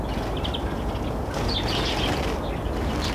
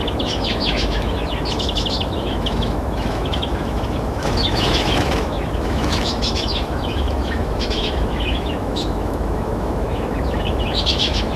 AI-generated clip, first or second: second